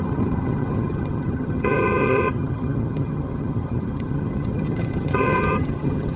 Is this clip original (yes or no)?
no